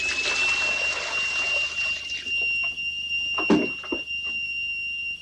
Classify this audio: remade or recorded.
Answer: recorded